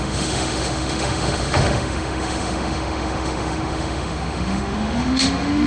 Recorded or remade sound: remade